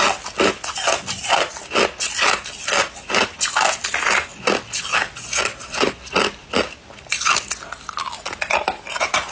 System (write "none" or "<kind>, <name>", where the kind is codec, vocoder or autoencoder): none